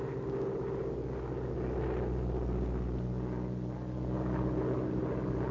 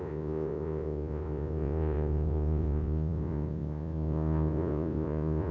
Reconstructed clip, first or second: second